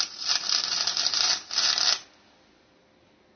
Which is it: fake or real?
real